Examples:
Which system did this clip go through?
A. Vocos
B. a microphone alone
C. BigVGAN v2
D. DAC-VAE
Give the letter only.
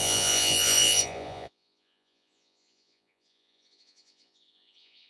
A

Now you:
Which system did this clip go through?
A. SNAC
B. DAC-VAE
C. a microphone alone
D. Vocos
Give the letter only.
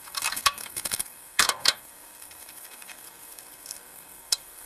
A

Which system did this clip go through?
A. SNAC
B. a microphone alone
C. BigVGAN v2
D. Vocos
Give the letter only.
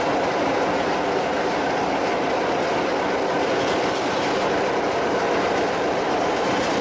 B